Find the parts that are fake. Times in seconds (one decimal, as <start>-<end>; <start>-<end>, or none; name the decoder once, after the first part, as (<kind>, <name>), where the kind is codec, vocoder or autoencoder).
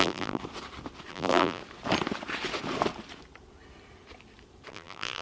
0.0-0.4 (vocoder, BigVGAN v2); 1.1-1.6; 4.7-5.2